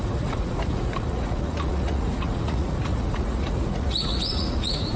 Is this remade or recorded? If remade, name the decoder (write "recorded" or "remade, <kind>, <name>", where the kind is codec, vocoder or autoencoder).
remade, vocoder, Vocos